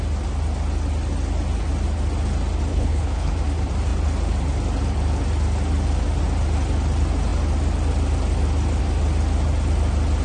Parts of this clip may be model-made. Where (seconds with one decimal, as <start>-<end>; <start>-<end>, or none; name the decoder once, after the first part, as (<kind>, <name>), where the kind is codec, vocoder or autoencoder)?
2.7-3.3 (codec, HILCodec)